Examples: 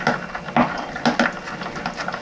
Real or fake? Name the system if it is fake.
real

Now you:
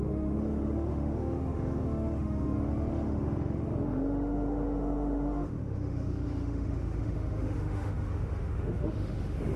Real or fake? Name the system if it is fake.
fake, autoencoder, DAC-VAE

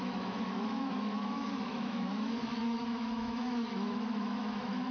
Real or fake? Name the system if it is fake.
fake, autoencoder, DAC-VAE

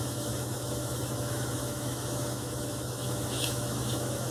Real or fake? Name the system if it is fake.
fake, autoencoder, DAC-VAE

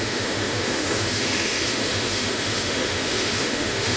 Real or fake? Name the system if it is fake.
fake, autoencoder, DAC-VAE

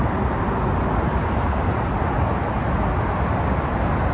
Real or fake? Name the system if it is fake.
real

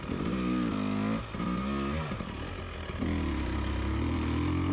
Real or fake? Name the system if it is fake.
real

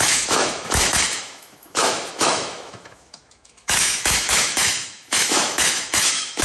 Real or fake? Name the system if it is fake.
fake, autoencoder, DAC-VAE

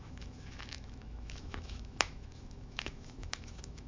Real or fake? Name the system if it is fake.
fake, autoencoder, DAC-VAE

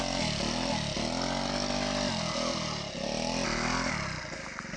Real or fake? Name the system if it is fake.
real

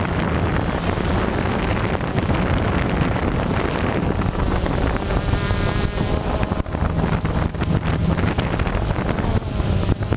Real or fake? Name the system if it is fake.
real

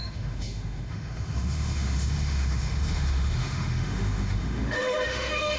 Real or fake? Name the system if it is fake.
fake, autoencoder, DAC-VAE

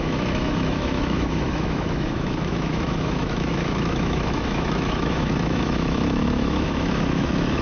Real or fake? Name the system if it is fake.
fake, autoencoder, DAC-VAE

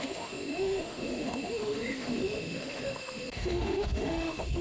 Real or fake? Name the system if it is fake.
fake, autoencoder, DAC-VAE